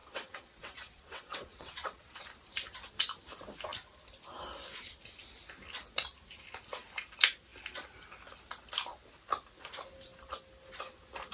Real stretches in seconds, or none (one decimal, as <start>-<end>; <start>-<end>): 2.2-11.3